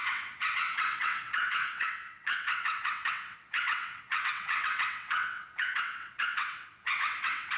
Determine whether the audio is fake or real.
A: fake